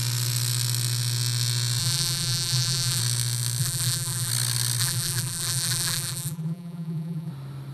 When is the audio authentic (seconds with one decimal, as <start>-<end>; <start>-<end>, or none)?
0.0-1.8; 3.0-3.6; 4.3-4.8; 7.3-7.7

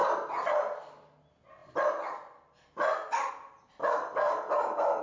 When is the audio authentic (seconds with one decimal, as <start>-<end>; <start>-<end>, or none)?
0.0-3.8

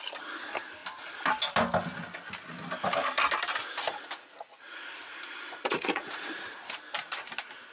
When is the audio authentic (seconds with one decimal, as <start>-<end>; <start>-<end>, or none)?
0.0-3.9; 6.6-7.7

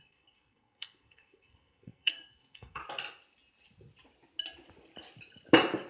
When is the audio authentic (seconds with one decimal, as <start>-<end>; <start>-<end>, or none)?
2.8-5.9